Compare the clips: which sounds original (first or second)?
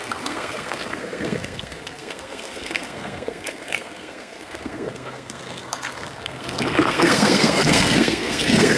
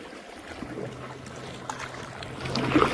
second